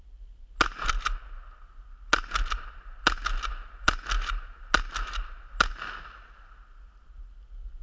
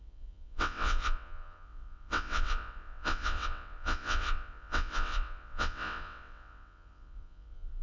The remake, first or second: second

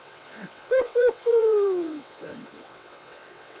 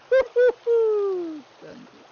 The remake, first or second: first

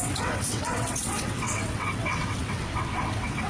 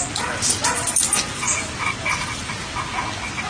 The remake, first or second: first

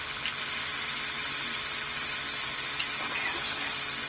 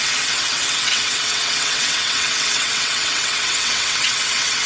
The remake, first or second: second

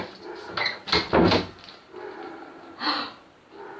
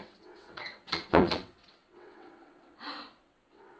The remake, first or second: second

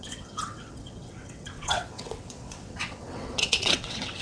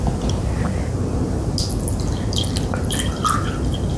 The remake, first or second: first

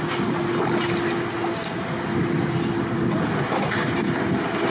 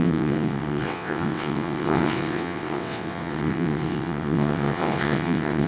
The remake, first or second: second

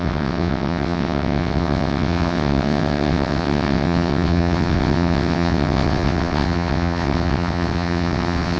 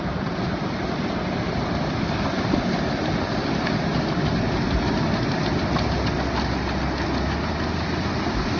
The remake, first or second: first